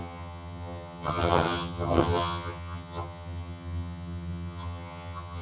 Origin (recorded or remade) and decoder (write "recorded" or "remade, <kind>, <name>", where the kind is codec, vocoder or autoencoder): remade, vocoder, HiFi-GAN